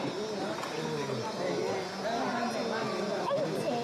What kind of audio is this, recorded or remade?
recorded